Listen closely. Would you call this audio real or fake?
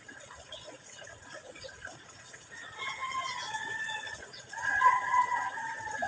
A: fake